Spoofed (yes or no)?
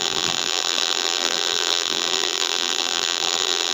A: yes